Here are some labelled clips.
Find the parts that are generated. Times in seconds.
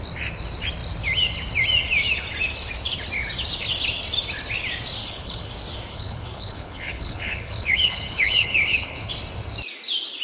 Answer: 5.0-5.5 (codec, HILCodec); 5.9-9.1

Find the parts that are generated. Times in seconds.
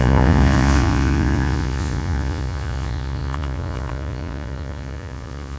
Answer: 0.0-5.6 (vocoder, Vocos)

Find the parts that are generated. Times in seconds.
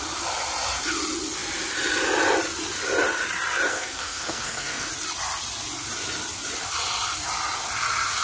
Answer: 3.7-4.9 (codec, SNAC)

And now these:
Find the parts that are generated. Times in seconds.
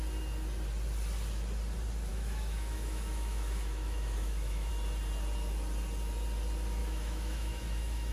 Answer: 2.1-4.7 (autoencoder, DAC-VAE); 6.8-8.1